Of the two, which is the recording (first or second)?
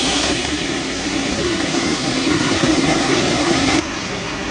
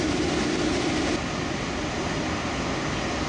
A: second